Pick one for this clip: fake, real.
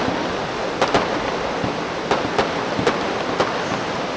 real